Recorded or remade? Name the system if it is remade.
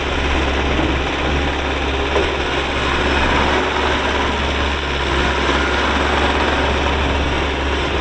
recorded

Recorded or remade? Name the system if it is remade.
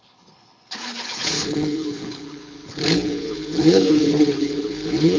remade, codec, HILCodec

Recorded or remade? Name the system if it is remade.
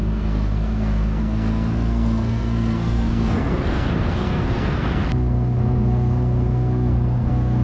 remade, codec, SNAC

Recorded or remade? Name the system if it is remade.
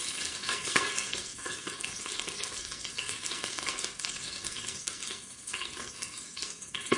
remade, codec, SNAC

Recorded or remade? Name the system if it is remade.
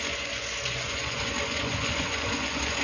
remade, vocoder, Vocos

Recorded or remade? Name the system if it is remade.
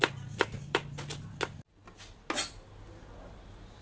recorded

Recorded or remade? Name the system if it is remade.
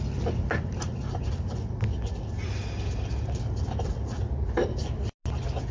recorded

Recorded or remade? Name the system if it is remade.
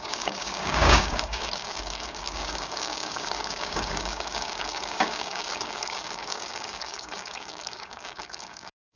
remade, codec, DAC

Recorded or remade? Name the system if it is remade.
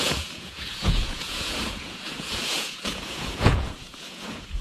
remade, vocoder, Vocos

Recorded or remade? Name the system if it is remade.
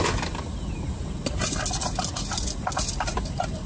recorded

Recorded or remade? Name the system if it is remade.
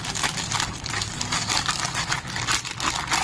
recorded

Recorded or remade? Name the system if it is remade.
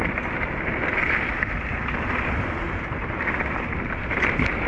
recorded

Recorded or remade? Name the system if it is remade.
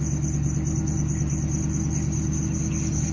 recorded